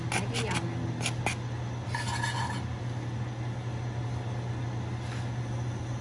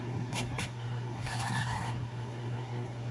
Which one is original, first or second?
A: first